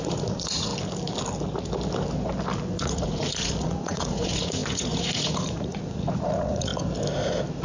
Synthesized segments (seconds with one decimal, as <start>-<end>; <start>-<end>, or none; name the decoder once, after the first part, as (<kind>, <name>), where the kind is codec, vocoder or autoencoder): 0.0-0.7 (vocoder, Vocos); 2.8-6.7